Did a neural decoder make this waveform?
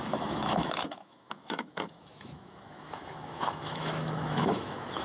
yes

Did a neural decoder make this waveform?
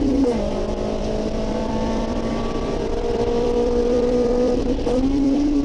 yes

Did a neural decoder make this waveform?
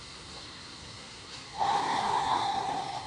yes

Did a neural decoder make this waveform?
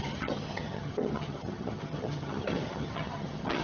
yes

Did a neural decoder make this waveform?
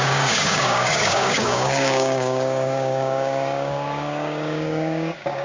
yes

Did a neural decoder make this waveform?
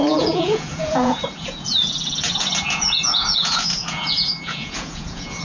yes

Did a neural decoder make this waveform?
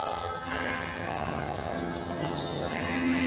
yes